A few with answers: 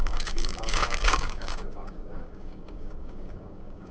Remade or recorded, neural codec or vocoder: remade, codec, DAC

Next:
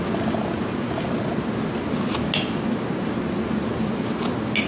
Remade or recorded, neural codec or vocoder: recorded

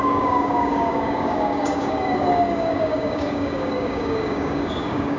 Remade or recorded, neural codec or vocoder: remade, codec, DAC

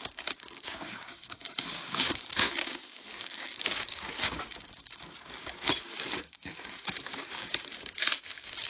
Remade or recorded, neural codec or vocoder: remade, codec, DAC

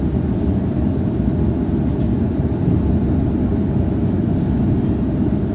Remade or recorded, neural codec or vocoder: recorded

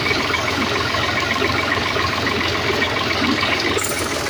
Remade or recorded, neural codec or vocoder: remade, codec, DAC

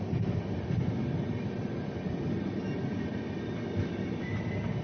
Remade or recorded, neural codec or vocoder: recorded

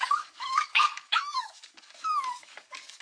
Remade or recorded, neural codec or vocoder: remade, codec, DAC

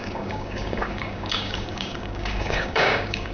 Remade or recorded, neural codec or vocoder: remade, codec, DAC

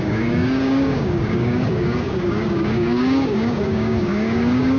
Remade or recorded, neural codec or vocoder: remade, codec, DAC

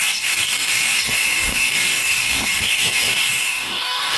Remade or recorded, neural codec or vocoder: remade, codec, DAC